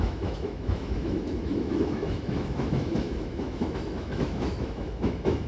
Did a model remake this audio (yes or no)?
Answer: yes